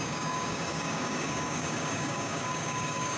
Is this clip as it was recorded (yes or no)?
no